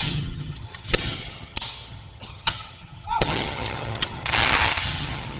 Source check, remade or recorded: remade